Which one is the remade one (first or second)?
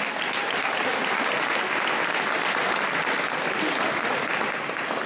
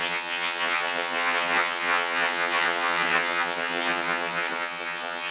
second